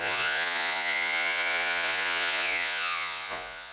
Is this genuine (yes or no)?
no